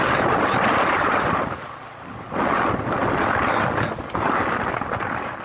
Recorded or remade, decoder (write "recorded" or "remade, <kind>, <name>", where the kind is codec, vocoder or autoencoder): recorded